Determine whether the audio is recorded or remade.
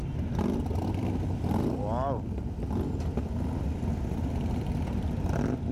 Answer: recorded